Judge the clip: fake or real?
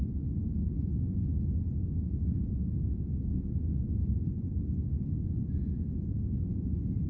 real